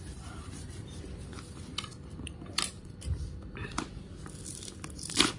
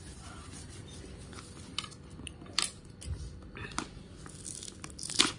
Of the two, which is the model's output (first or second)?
first